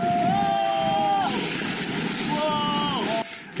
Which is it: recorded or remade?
recorded